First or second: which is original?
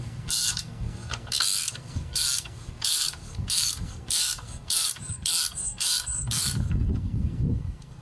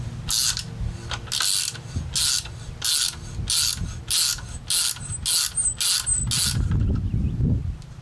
second